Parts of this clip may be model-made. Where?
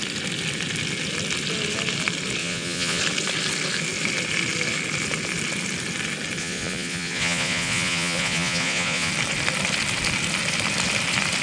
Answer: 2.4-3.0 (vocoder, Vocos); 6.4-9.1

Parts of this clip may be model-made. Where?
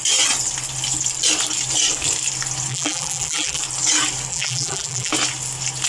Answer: 2.7-3.6 (vocoder, BigVGAN v2); 4.3-5.1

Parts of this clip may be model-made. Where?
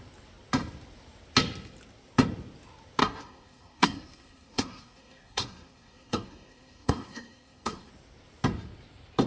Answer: 3.0-7.9 (codec, SNAC)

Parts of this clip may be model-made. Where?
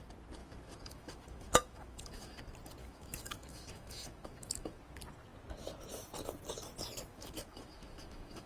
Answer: 0.4-2.4 (autoencoder, DAC-VAE); 2.8-4.8; 7.1-8.5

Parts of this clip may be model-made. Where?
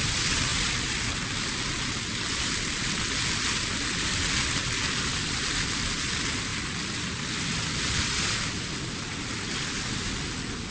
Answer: none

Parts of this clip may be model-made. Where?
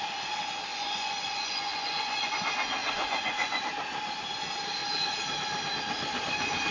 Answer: 0.7-2.3 (vocoder, Vocos); 2.8-3.6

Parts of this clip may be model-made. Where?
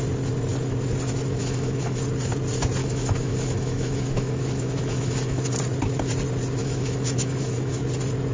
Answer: 1.4-2.0 (autoencoder, DAC-VAE); 2.8-5.5; 6.6-7.8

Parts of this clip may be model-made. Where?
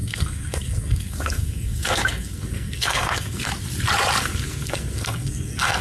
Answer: 0.0-3.5 (codec, SNAC); 4.2-5.8